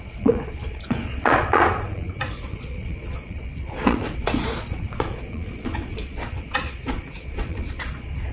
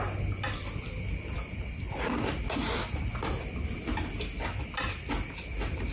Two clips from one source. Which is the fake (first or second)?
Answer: first